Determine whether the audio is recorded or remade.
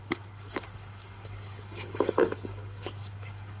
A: remade